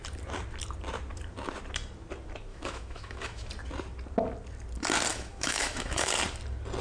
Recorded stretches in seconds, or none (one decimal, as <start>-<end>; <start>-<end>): 0.0-2.5; 3.5-5.1; 6.1-6.8